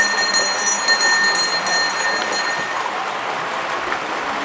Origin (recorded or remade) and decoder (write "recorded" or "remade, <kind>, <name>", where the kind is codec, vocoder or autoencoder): recorded